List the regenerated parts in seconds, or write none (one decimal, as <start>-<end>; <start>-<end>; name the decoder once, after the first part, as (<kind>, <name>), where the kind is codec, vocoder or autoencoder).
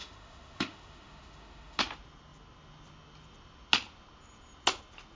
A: 0.0-1.8 (autoencoder, DAC-VAE)